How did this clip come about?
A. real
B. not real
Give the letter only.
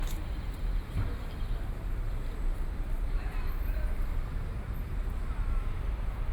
B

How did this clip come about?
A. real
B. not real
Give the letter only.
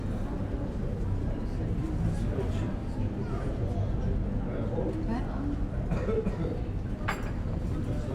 A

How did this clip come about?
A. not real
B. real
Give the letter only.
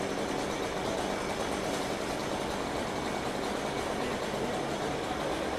B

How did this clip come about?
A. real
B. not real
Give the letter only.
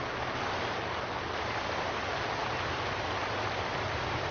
A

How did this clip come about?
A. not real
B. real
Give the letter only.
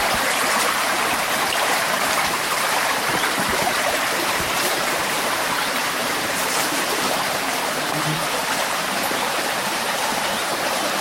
A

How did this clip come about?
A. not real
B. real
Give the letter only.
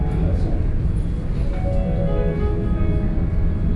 B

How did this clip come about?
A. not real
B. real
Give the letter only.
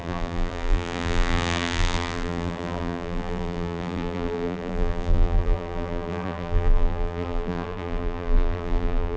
A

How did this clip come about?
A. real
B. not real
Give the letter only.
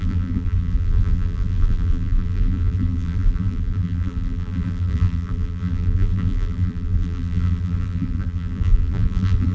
B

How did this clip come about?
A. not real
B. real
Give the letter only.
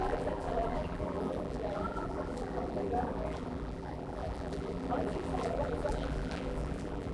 A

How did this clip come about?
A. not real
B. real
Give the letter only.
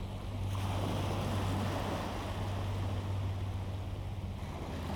B